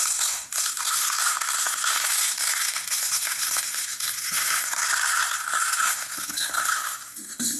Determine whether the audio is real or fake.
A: fake